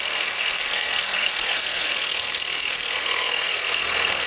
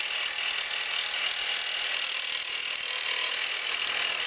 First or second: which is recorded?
second